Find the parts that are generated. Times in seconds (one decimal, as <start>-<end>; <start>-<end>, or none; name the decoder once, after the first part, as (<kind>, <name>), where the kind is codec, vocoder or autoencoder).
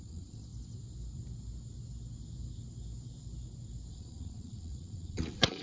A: 0.0-0.5 (vocoder, Vocos); 3.9-5.6